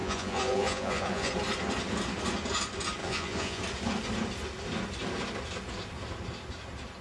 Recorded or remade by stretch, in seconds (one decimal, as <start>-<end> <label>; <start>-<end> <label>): 0.0-1.3 remade; 1.3-3.0 recorded; 3.0-3.6 remade; 3.6-7.0 recorded